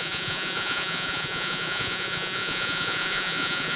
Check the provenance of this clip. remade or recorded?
remade